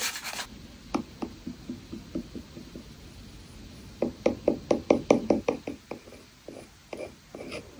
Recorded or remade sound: recorded